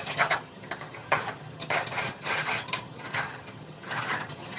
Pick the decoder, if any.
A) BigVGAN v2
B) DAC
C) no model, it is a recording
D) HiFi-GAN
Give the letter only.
D